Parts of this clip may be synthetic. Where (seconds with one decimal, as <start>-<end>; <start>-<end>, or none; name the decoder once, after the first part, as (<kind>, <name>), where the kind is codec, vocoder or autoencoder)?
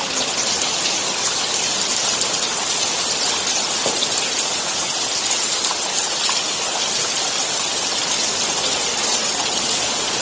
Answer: 9.0-10.2 (vocoder, Vocos)